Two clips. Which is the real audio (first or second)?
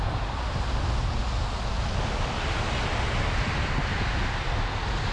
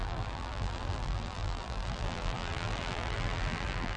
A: first